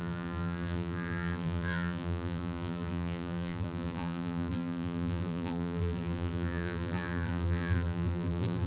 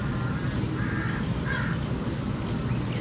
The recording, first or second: second